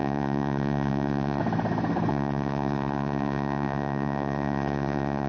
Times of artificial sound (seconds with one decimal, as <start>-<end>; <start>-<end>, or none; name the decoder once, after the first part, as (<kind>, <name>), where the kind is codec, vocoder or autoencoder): 0.0-1.4 (vocoder, Vocos); 2.1-5.3